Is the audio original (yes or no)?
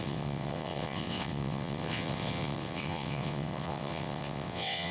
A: no